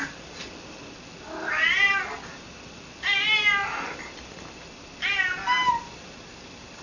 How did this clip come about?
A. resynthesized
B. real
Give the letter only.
B